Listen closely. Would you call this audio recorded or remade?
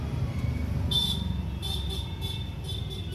recorded